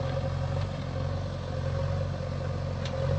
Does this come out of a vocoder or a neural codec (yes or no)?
no